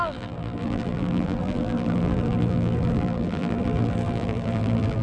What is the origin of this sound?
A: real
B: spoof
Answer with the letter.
B